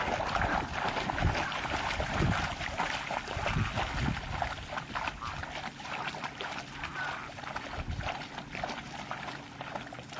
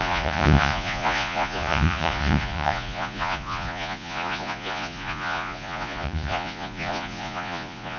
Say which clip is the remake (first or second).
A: second